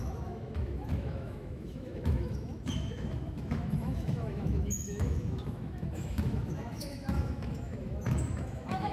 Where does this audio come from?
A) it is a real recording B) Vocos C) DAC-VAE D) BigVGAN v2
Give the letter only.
C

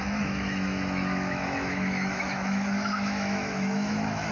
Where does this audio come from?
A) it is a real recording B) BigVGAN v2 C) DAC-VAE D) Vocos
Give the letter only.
C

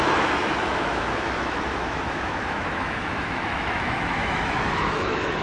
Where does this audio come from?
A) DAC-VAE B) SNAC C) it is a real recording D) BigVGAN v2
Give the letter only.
A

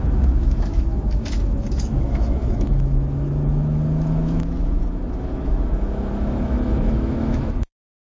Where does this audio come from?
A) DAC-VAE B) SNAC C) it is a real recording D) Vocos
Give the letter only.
A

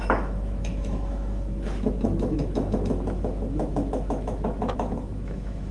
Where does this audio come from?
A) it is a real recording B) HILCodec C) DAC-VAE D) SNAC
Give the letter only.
C